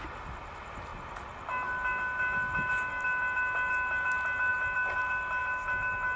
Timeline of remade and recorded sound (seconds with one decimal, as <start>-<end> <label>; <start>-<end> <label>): 0.0-6.2 recorded